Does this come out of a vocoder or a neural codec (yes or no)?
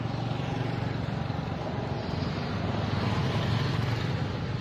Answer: no